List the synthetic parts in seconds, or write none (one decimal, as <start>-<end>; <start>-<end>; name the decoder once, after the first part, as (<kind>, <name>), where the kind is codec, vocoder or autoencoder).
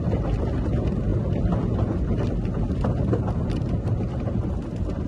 none